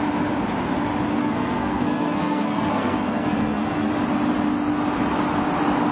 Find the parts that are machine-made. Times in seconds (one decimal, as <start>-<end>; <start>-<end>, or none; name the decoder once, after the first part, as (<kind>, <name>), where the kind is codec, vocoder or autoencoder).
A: 1.2-3.9 (codec, SNAC)